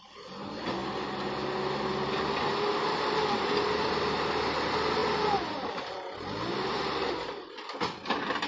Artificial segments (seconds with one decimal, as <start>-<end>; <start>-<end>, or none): none

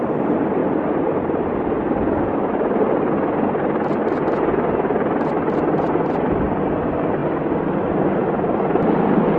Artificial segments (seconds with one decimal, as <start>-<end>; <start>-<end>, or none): 0.6-1.2

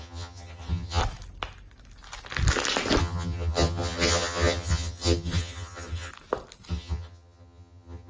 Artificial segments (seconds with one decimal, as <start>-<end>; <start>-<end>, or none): 0.0-1.0; 3.0-6.1; 6.7-8.1

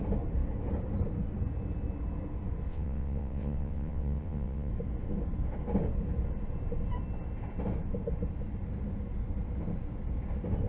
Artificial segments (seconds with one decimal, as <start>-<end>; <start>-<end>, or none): 2.7-4.7

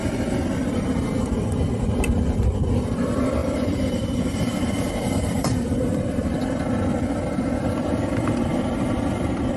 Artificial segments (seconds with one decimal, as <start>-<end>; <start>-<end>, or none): 3.4-6.3

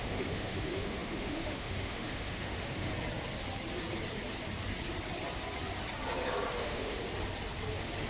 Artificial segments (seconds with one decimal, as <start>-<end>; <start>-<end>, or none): 0.0-2.9; 6.6-7.0

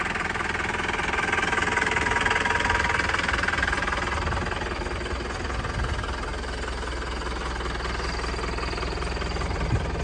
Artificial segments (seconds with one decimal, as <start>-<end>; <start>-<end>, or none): none